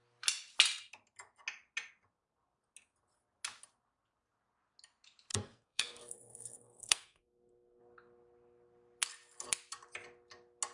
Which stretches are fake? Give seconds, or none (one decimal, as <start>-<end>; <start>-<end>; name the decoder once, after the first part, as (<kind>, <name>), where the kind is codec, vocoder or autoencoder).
5.3-7.8 (codec, SNAC)